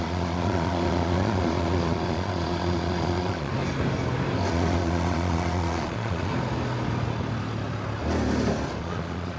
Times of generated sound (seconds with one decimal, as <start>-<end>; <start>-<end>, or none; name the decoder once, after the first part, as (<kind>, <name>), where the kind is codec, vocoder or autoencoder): 0.0-3.5 (vocoder, Vocos); 4.5-6.3; 8.8-9.4